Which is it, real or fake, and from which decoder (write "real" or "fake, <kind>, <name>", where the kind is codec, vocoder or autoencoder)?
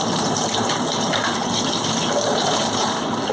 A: fake, vocoder, BigVGAN v2